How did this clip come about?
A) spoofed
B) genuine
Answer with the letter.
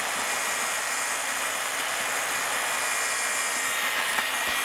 B